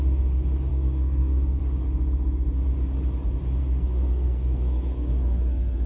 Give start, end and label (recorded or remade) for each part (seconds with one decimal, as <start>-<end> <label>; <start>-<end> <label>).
0.0-0.7 recorded; 0.7-1.6 remade; 1.6-3.6 recorded; 3.6-5.9 remade